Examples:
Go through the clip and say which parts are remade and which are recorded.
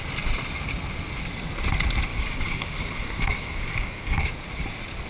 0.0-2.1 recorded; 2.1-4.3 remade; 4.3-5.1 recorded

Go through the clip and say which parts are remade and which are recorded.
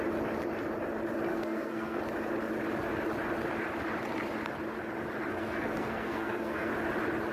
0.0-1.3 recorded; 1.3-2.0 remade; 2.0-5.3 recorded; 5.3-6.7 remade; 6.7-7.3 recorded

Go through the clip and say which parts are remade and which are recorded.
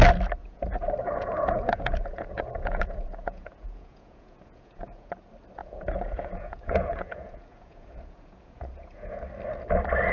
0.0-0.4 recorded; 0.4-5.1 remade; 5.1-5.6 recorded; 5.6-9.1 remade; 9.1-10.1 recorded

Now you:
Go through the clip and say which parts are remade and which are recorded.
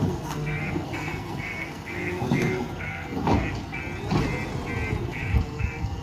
0.0-3.8 remade; 3.8-5.0 recorded; 5.0-6.0 remade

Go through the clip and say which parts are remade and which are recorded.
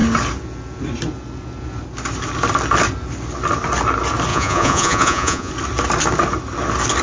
0.0-4.3 recorded; 4.3-5.5 remade; 5.5-7.0 recorded